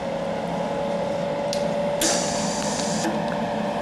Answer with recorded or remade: recorded